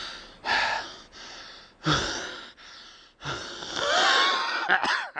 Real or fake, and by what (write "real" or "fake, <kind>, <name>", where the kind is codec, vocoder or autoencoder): real